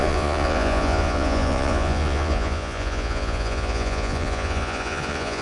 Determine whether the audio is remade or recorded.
remade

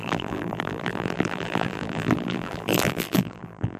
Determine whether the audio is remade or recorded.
remade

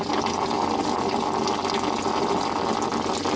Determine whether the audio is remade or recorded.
recorded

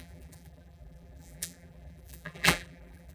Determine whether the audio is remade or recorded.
remade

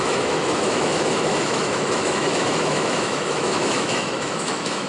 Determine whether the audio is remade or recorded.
remade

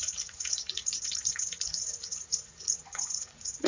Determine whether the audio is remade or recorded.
remade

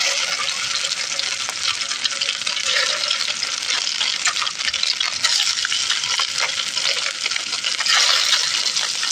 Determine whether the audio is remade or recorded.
recorded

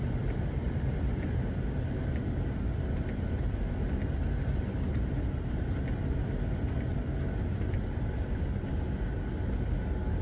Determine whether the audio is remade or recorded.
recorded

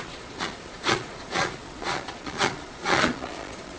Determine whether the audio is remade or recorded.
remade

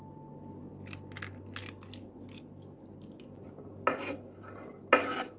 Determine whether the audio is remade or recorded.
recorded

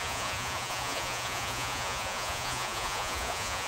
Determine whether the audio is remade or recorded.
remade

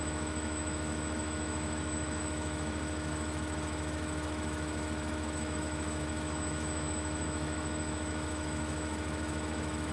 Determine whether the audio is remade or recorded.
remade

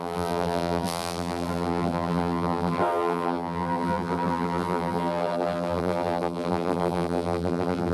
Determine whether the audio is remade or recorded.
remade